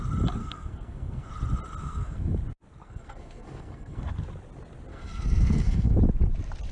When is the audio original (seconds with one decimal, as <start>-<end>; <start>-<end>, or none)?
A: 0.0-0.4; 1.3-1.8; 2.4-2.8; 4.1-4.9; 6.0-6.7